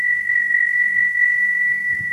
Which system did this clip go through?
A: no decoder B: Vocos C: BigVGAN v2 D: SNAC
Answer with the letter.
D